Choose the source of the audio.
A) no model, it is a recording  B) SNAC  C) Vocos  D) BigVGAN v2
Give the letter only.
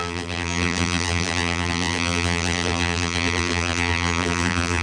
D